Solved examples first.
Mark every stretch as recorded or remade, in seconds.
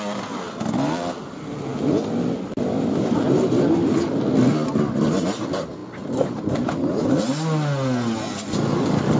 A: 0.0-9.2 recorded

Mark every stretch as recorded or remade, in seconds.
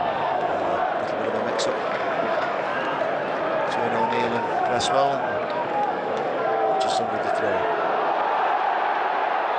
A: 0.0-0.7 remade; 0.7-1.8 recorded; 1.8-2.7 remade; 2.7-4.0 recorded; 4.0-7.1 remade; 7.1-9.6 recorded